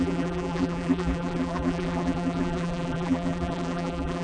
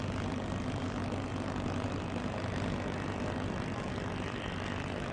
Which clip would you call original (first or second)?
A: second